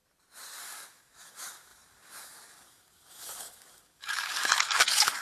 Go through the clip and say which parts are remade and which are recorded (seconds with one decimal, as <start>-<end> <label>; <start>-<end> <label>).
0.0-0.6 recorded; 0.6-5.2 remade